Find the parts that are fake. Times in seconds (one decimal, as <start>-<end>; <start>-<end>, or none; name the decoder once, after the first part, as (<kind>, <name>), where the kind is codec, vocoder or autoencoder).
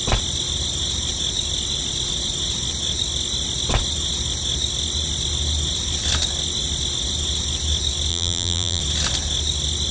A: 8.1-8.8 (vocoder, BigVGAN v2)